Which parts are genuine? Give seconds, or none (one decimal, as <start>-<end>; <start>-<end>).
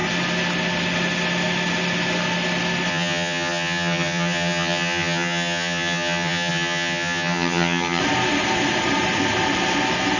0.0-2.9; 8.0-10.2